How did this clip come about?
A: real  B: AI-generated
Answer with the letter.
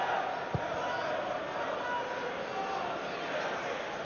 A